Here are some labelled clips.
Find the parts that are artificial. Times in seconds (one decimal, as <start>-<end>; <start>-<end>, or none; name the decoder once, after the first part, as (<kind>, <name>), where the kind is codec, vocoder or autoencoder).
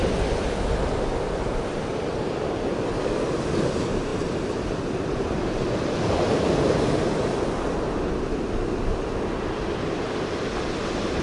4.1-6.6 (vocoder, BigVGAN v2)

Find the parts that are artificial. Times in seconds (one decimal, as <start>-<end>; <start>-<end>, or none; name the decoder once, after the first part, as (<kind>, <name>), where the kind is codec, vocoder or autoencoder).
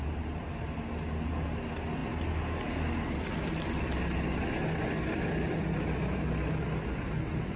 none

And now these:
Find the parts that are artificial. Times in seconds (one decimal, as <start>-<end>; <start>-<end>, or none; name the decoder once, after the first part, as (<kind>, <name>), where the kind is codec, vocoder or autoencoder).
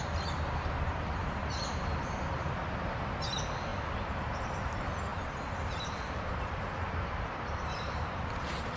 0.0-1.4 (vocoder, BigVGAN v2); 2.3-3.7; 4.4-5.1; 5.6-8.8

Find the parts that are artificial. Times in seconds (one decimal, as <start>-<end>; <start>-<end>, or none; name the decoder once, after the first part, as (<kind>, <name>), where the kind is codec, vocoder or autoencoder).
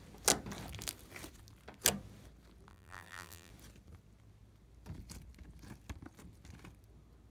2.7-3.5 (vocoder, BigVGAN v2)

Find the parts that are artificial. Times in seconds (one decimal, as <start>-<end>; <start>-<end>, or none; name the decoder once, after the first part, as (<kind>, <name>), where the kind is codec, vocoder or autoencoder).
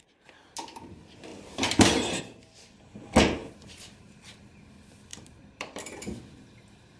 1.3-2.2 (vocoder, BigVGAN v2); 3.4-4.2; 5.1-6.2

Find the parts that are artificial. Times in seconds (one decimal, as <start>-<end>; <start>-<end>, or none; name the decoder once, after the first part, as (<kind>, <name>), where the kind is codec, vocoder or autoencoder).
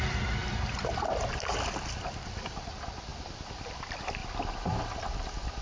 0.0-3.1 (vocoder, BigVGAN v2); 3.7-4.2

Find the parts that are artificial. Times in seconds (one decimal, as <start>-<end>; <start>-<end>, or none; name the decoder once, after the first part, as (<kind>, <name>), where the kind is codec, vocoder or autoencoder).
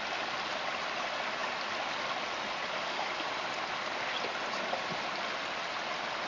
none